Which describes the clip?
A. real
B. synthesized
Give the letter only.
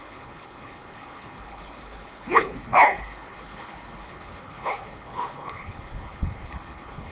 B